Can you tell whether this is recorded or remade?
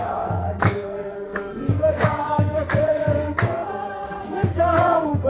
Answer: remade